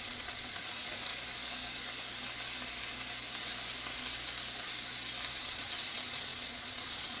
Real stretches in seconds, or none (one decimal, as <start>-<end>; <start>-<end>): 1.1-5.4